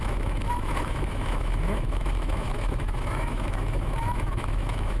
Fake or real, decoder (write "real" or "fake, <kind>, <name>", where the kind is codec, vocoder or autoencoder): fake, autoencoder, DAC-VAE